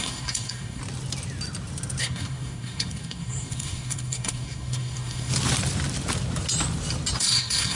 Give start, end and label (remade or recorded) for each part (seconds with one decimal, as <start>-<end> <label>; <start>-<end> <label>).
0.0-0.8 remade; 0.8-2.0 recorded; 2.0-5.3 remade; 5.3-7.2 recorded; 7.2-7.7 remade